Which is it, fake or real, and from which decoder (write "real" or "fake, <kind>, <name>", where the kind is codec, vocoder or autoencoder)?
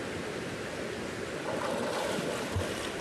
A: real